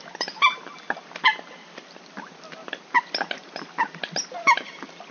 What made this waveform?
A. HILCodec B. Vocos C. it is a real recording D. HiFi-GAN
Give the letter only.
C